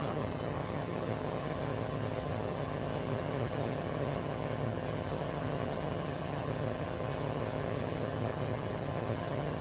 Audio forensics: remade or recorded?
remade